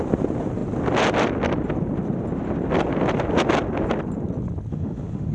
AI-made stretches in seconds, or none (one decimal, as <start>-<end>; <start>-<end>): 4.7-5.3